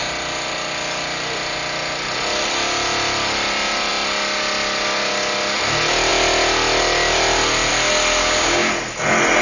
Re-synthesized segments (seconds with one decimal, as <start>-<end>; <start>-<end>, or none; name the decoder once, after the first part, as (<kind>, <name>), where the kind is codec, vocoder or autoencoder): 8.2-8.7 (codec, DAC)